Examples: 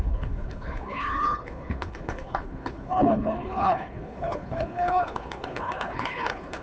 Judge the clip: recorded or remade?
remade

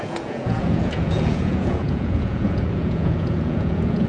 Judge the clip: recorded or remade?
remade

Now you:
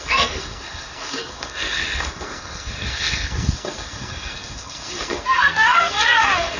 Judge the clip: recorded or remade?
remade